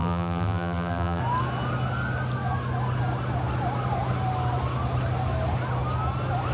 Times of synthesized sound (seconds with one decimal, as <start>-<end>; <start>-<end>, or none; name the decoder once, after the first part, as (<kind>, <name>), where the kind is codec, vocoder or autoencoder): 0.0-1.2 (vocoder, BigVGAN v2)